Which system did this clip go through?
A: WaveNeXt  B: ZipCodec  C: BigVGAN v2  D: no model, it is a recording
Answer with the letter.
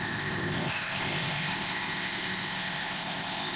B